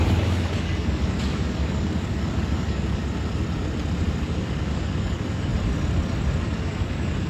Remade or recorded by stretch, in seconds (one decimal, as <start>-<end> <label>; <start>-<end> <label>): 0.0-3.0 remade; 3.0-4.2 recorded; 4.2-5.5 remade; 5.5-6.4 recorded; 6.4-7.3 remade